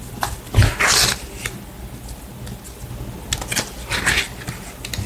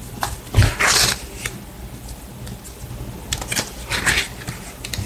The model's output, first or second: second